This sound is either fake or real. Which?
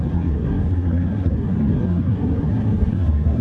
fake